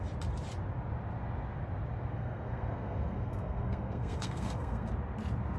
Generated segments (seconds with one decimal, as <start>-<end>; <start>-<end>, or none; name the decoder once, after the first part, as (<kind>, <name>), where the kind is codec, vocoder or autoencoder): 2.1-4.9 (codec, SNAC)